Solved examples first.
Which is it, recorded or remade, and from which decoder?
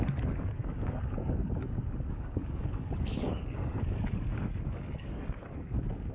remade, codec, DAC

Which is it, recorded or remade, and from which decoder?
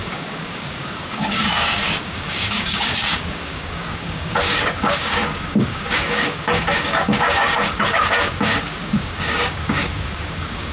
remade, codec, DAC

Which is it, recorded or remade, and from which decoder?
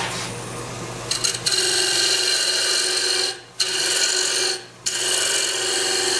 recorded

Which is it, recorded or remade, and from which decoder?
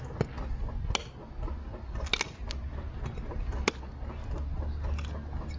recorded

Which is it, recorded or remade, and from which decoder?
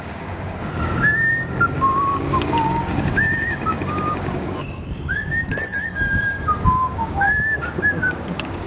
remade, codec, DAC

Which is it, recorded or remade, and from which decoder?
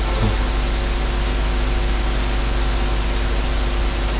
recorded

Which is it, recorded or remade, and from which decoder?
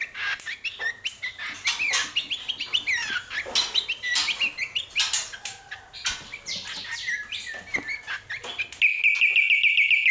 recorded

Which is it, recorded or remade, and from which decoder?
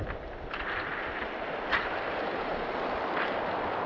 recorded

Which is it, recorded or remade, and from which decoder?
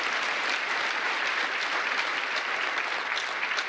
recorded